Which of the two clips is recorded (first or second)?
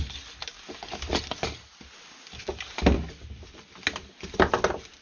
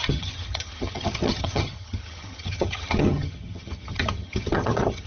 first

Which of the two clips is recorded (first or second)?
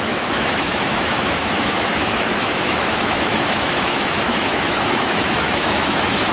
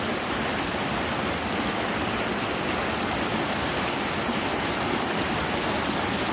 second